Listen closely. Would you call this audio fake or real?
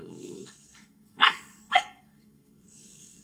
fake